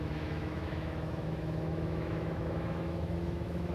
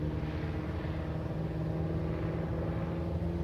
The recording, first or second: second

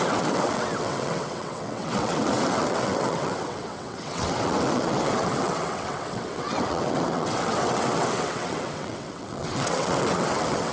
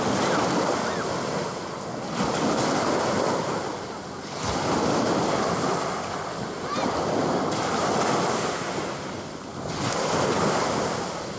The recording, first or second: second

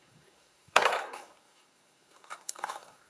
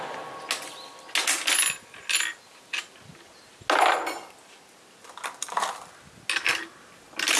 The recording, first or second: second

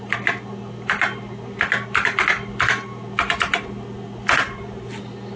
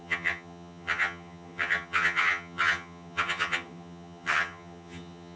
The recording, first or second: first